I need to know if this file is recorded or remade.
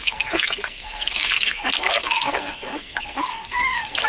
remade